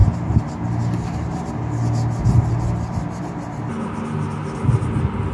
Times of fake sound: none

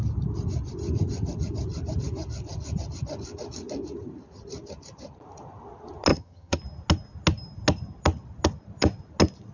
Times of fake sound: 6.1-6.6

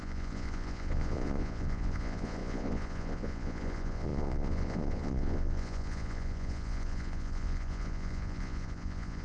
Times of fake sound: 0.0-9.2

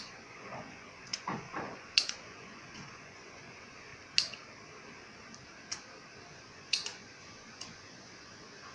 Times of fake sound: 0.0-3.9; 6.3-8.7

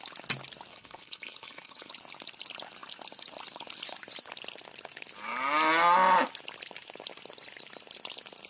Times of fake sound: 0.7-1.9

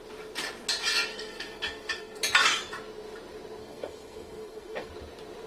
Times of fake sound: 1.1-2.2; 3.6-4.9